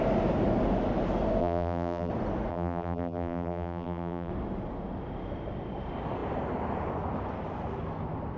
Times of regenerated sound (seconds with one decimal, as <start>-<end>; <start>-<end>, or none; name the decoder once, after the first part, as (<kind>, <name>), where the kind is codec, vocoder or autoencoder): 1.4-2.1 (vocoder, BigVGAN v2); 2.5-4.3